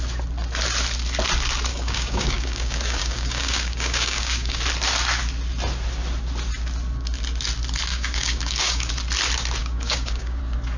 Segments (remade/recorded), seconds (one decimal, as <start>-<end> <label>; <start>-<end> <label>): 0.0-1.7 recorded; 1.7-4.6 remade; 4.6-7.9 recorded; 7.9-8.9 remade; 8.9-9.6 recorded; 9.6-10.4 remade; 10.4-10.8 recorded